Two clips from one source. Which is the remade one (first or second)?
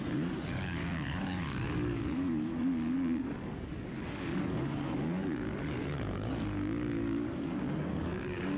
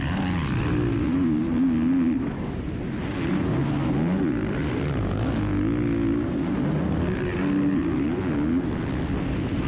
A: first